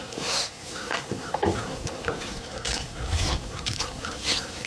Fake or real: fake